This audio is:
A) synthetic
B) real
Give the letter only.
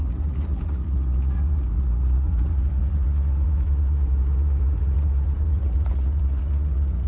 A